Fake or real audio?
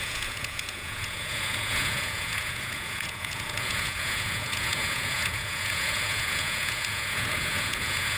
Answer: fake